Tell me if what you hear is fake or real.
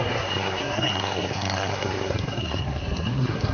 fake